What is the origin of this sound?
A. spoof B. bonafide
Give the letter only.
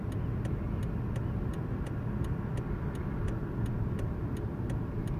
B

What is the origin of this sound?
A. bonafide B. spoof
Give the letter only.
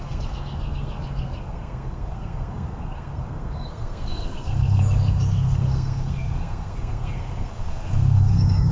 B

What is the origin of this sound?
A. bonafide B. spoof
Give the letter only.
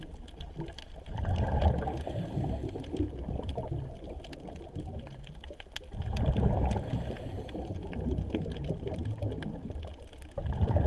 A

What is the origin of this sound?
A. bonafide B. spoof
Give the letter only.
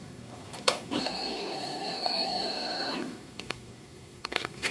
B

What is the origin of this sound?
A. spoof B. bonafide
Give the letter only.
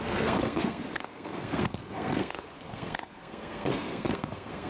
A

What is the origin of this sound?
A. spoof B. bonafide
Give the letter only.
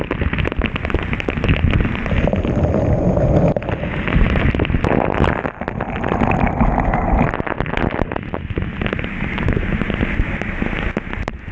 B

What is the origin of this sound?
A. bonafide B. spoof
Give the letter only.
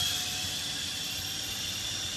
A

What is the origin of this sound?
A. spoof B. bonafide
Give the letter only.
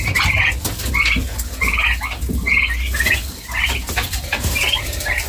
B